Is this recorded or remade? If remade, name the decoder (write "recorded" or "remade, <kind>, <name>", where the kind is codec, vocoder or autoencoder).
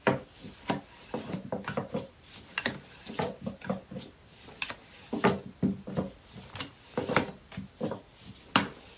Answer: recorded